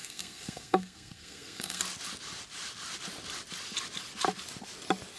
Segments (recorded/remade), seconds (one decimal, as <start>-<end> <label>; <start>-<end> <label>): 0.0-1.8 remade; 1.8-5.2 recorded